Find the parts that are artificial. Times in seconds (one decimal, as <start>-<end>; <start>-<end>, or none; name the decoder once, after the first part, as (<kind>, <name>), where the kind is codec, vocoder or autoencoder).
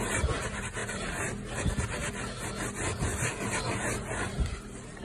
0.8-1.4 (vocoder, BigVGAN v2); 3.1-5.0